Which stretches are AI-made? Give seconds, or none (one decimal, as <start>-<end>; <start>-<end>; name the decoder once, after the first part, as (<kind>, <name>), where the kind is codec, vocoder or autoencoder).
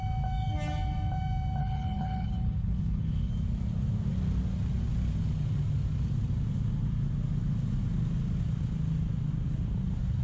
1.6-3.3 (codec, HILCodec)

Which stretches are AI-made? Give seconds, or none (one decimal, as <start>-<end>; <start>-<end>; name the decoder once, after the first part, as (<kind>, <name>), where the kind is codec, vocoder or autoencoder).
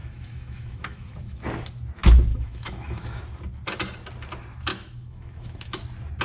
0.0-1.4 (autoencoder, DAC-VAE); 2.3-3.2; 4.7-5.8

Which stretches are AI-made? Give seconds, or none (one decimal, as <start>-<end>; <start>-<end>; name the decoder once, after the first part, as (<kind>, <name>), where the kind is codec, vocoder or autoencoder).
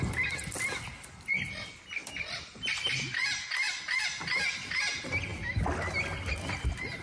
none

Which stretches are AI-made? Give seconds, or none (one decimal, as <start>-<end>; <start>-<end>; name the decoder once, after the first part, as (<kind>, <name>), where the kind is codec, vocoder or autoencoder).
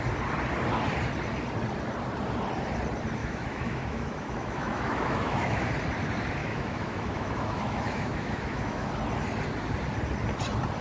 3.2-5.7 (autoencoder, DAC-VAE); 6.4-8.9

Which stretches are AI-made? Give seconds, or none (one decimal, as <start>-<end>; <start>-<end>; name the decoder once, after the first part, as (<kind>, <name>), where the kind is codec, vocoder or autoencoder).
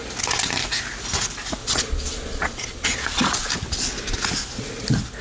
1.6-3.5 (vocoder, Vocos)